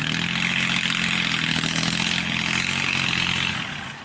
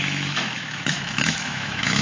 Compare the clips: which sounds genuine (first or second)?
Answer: first